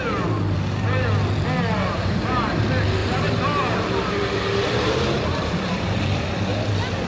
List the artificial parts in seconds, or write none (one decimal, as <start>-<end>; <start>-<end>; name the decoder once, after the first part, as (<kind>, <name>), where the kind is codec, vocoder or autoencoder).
1.8-2.6 (vocoder, BigVGAN v2); 3.0-6.4